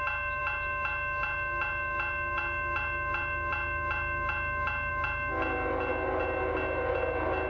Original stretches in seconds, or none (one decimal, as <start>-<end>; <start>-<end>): 0.0-7.5